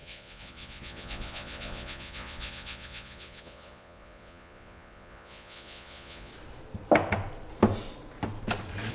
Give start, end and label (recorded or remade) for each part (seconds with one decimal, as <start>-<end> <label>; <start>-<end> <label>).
0.0-6.3 remade; 6.3-8.9 recorded